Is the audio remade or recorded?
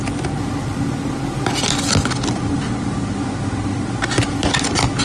recorded